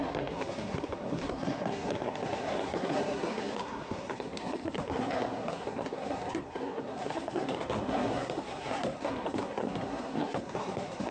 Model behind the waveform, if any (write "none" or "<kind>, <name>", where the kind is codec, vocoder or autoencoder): codec, SNAC